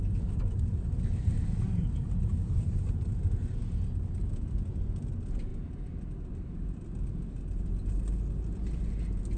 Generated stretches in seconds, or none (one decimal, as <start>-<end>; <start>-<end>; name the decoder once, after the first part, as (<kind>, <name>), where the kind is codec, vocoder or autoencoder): none

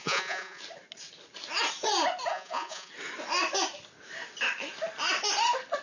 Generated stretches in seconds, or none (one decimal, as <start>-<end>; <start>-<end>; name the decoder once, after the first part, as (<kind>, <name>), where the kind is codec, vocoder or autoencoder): 0.0-0.6 (vocoder, Vocos); 2.3-2.9

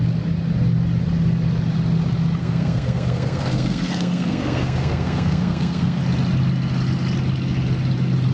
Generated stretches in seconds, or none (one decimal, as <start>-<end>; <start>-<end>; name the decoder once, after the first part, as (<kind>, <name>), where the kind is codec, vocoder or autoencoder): 2.4-6.0 (codec, SNAC)

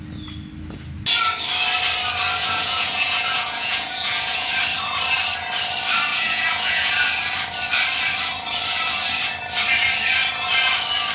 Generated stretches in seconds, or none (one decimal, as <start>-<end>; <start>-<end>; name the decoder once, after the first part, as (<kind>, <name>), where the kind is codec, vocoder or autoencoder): 2.4-4.5 (vocoder, Vocos); 6.1-6.9

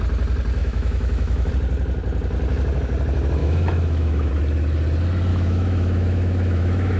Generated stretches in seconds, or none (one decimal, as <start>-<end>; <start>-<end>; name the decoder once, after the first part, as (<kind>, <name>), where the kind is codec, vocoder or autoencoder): 0.6-1.5 (autoencoder, DAC-VAE); 3.4-4.3; 5.3-7.0

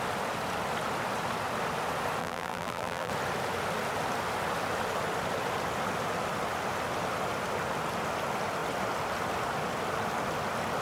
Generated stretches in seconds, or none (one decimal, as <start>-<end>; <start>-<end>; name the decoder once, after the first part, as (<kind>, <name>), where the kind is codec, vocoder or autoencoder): 2.2-3.1 (vocoder, BigVGAN v2)

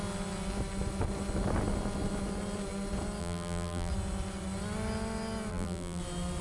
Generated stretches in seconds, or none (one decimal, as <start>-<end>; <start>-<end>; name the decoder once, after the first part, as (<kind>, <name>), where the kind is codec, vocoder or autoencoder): 3.2-3.9 (vocoder, BigVGAN v2); 5.5-6.0

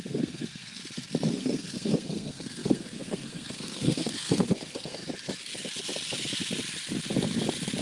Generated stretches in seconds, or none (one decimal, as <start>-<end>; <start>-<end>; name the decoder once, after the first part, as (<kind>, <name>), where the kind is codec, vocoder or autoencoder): 0.0-0.8 (codec, SNAC); 1.3-5.0